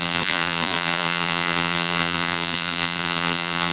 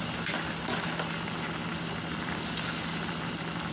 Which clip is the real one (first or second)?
second